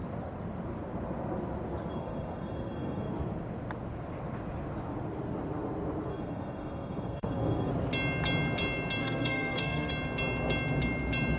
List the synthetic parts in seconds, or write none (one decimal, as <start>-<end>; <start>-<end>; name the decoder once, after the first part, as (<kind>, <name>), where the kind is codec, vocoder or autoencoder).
1.9-3.1 (codec, SNAC); 6.1-7.7; 9.0-9.9